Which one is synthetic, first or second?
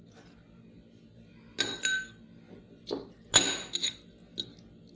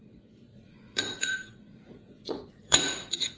second